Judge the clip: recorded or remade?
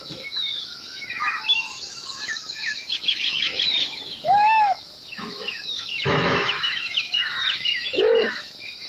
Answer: remade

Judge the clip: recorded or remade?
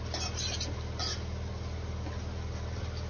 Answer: recorded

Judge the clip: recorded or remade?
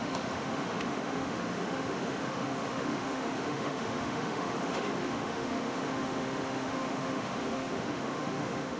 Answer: remade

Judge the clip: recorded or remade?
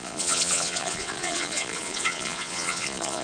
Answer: remade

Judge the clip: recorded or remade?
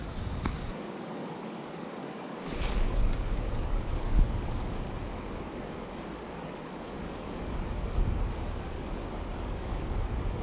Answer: remade